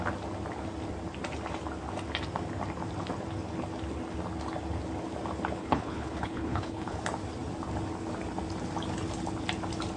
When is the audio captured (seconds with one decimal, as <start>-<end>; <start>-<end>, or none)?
0.0-5.6; 7.0-10.0